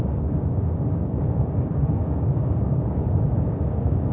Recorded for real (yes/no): no